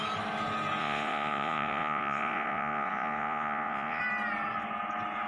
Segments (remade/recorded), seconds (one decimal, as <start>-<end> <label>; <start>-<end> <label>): 0.0-0.8 recorded; 0.8-4.0 remade; 4.0-5.3 recorded